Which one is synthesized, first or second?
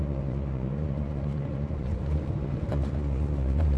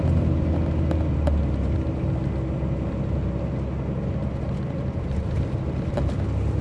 first